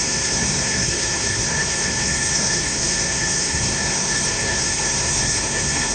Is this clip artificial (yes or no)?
yes